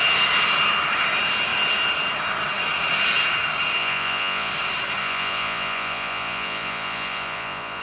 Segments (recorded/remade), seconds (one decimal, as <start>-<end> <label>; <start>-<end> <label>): 0.0-3.8 recorded; 3.8-4.5 remade; 4.5-5.0 recorded; 5.0-7.8 remade